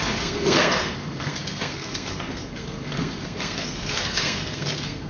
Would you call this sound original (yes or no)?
no